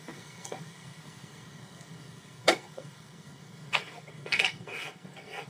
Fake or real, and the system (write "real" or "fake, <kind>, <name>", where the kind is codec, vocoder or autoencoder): fake, codec, SNAC